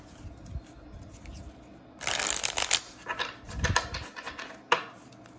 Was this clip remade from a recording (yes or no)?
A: no